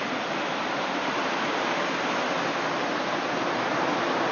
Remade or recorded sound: remade